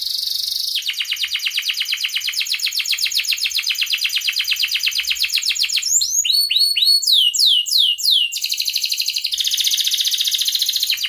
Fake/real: real